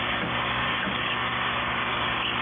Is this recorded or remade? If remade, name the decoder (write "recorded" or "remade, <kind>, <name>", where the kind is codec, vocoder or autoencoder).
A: remade, codec, DAC